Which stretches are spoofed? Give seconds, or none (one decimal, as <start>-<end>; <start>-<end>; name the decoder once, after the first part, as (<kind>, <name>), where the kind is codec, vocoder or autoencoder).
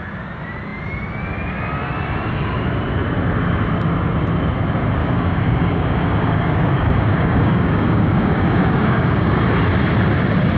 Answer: 5.0-9.4 (codec, DAC)